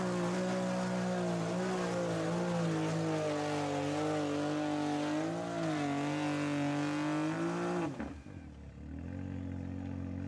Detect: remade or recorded recorded